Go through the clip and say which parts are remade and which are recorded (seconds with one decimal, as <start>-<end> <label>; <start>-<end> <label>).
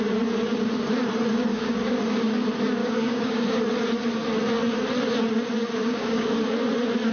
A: 0.0-1.5 recorded; 1.5-2.0 remade; 2.0-2.8 recorded; 2.8-3.6 remade; 3.6-5.8 recorded; 5.8-6.4 remade; 6.4-7.1 recorded